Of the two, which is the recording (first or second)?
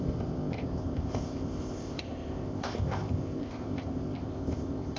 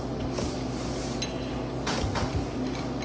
second